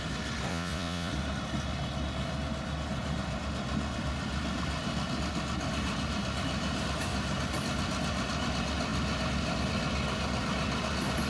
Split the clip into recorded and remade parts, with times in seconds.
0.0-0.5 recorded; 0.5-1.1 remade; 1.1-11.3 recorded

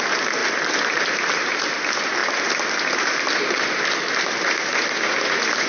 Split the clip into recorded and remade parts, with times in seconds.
0.0-5.7 recorded